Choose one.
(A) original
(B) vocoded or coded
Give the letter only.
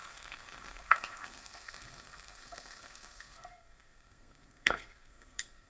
B